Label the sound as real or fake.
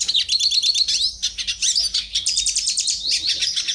real